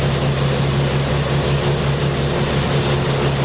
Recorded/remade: recorded